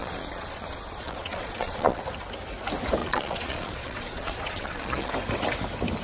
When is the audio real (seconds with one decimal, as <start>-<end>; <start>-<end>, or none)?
2.0-3.0; 5.1-6.0

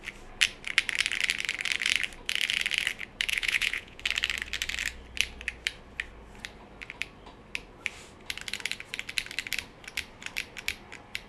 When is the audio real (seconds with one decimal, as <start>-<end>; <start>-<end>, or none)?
0.0-3.3; 4.0-11.3

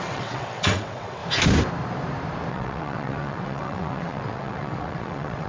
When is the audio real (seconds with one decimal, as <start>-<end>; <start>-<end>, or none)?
1.2-2.5

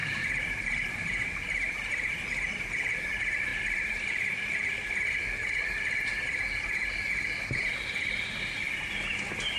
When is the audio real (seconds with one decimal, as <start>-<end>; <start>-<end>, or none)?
2.1-3.5; 4.4-9.6